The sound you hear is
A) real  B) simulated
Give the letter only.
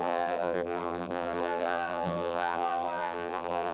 B